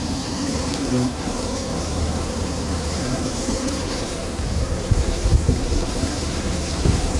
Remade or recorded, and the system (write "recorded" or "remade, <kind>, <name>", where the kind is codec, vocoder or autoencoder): remade, codec, SNAC